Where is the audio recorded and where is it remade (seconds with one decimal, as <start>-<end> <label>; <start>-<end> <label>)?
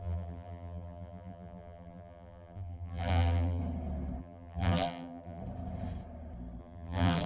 0.0-3.6 remade; 3.6-4.2 recorded; 4.2-5.4 remade; 5.4-6.6 recorded; 6.6-7.3 remade